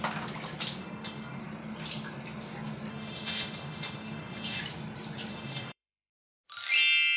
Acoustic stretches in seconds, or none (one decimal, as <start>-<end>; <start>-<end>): 0.0-0.8; 1.4-2.9; 4.6-5.3; 6.1-7.2